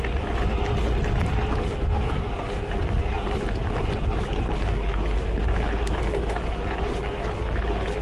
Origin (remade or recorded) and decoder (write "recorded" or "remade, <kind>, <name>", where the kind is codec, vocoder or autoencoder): recorded